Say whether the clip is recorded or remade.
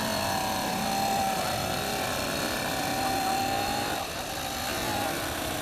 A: remade